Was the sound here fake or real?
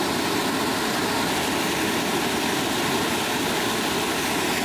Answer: real